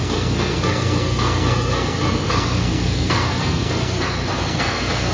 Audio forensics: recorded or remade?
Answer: remade